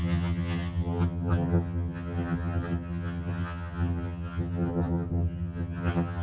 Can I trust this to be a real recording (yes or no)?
no